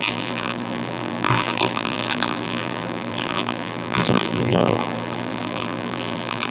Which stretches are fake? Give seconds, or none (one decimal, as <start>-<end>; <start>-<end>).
0.0-6.5